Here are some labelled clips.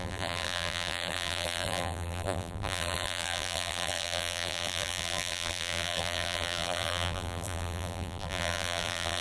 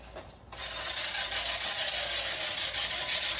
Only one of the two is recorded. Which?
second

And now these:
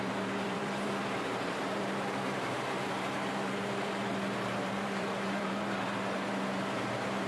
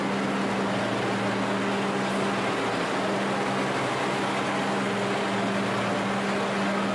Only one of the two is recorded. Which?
second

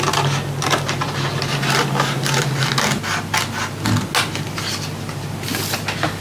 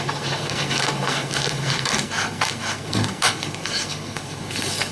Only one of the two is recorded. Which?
first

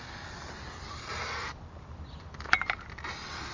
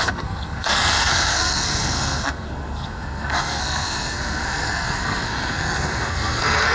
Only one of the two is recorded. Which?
first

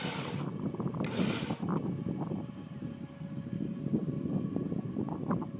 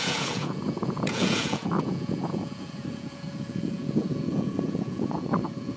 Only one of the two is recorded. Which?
first